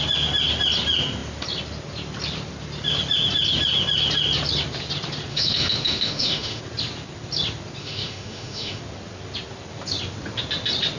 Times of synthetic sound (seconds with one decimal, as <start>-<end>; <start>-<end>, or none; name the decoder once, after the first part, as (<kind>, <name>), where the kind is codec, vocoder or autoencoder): 5.3-6.6 (autoencoder, DAC-VAE); 7.8-8.8